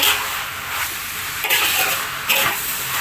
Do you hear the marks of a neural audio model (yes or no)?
no